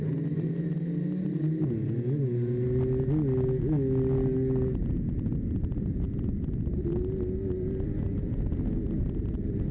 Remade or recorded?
recorded